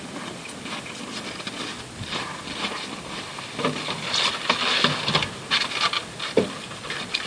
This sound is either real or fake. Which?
real